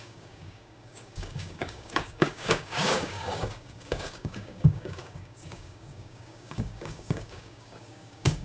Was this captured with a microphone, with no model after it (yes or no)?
no